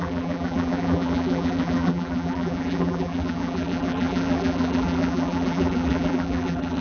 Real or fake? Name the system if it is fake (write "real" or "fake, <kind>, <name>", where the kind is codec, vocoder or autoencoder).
fake, vocoder, BigVGAN v2